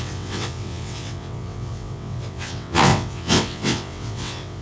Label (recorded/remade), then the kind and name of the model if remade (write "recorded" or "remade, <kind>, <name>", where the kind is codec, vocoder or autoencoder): remade, vocoder, WaveNeXt